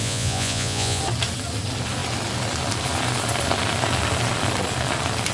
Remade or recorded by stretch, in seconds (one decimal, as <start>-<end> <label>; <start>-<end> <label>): 0.0-1.0 remade; 1.0-5.3 recorded